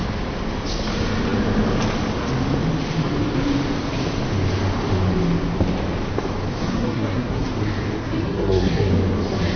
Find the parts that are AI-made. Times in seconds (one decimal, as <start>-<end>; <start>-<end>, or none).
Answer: 6.6-7.5; 8.0-8.9